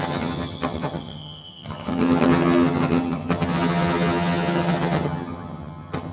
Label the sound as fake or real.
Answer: fake